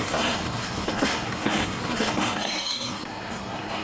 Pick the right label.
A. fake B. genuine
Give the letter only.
A